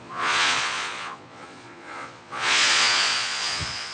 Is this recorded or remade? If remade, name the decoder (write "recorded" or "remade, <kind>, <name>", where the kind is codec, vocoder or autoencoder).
remade, vocoder, Vocos